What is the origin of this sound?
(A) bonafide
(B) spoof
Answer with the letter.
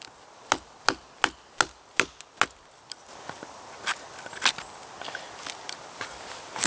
A